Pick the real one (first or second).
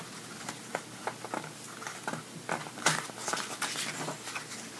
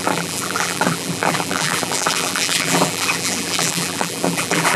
first